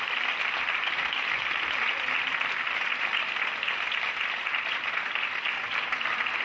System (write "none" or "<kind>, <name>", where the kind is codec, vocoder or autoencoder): none